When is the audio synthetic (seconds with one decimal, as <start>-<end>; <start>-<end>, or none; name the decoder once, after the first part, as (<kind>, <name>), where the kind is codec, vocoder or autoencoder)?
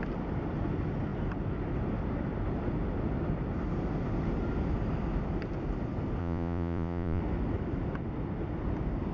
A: 6.2-7.2 (vocoder, Vocos)